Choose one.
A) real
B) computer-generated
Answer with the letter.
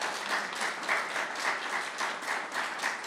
A